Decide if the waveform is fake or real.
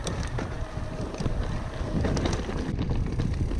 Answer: real